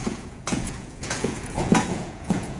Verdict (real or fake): fake